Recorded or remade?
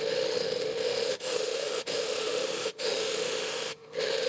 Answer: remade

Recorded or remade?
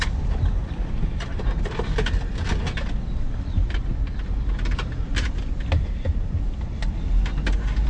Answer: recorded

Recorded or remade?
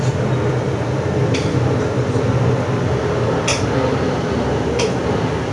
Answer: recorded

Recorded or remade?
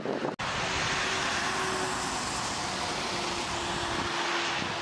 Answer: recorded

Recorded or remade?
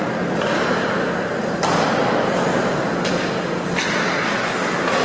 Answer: recorded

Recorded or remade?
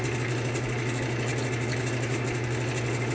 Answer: recorded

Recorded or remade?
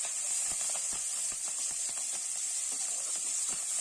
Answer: remade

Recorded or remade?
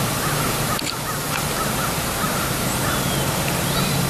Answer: recorded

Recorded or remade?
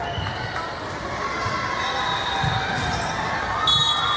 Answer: recorded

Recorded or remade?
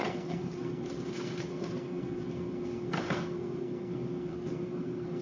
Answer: remade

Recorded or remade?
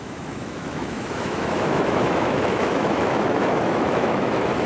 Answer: remade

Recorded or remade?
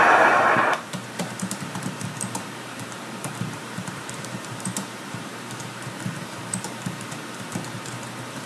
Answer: remade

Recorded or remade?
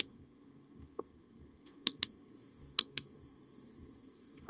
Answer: remade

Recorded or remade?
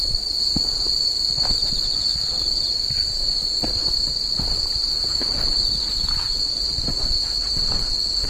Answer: remade